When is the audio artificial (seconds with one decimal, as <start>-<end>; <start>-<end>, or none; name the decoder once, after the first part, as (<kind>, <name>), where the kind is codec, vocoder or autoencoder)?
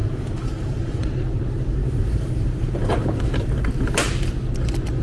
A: 0.0-1.1 (vocoder, BigVGAN v2); 1.8-3.0